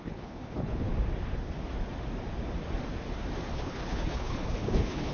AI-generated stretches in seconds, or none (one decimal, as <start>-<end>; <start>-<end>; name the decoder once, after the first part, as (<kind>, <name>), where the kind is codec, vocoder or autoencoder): 0.0-0.9 (codec, HILCodec); 3.5-5.1